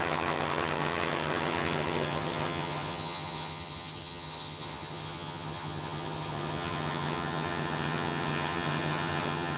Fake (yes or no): yes